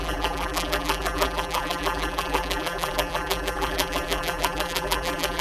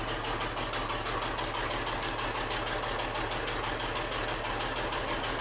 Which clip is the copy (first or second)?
first